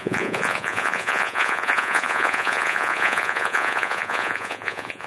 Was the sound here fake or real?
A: fake